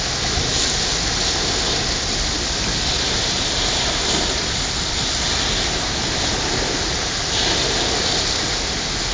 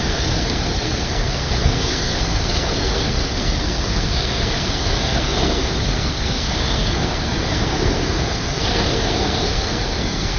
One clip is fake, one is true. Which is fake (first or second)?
second